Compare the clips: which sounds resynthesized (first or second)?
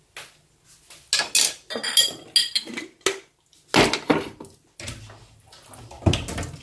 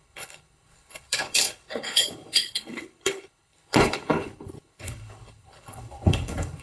second